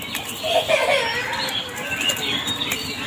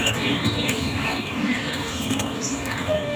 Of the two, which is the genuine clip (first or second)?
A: first